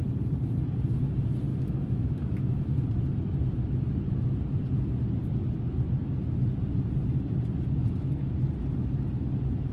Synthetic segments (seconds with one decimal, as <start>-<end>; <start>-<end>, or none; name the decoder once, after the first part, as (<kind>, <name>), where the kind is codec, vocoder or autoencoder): 1.5-2.8 (autoencoder, DAC-VAE)